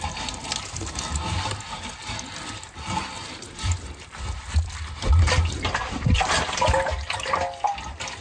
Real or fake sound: real